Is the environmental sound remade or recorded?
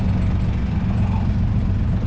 recorded